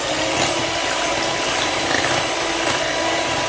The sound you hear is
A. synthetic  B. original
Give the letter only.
B